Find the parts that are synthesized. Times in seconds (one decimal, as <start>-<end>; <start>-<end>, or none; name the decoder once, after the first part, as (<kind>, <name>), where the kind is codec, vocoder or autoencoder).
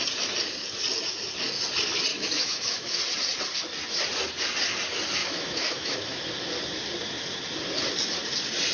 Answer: 2.1-3.0 (autoencoder, DAC-VAE); 5.2-6.2